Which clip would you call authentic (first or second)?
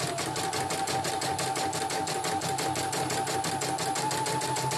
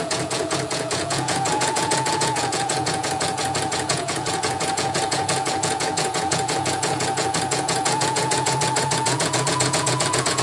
first